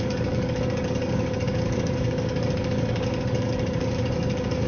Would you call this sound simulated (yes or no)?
yes